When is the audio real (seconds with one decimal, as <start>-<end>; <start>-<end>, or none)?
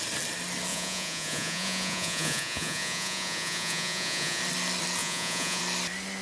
0.0-0.7; 4.4-5.0; 5.6-6.2